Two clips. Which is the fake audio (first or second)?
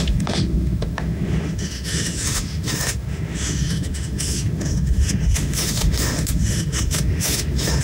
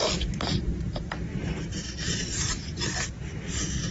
first